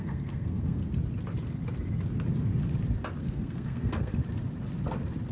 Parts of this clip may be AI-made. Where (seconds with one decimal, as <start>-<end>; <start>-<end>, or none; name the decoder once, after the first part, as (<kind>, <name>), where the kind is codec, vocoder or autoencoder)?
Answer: 0.0-0.8 (codec, SNAC); 3.2-4.2